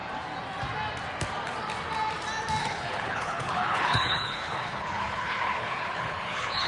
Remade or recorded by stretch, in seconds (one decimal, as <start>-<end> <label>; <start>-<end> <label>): 0.0-2.6 recorded; 2.6-6.7 remade